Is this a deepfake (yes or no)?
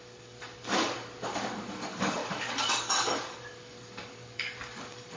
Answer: yes